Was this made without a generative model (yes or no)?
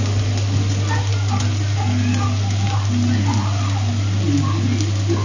yes